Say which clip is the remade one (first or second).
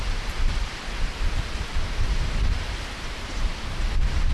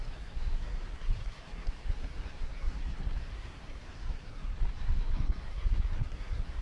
second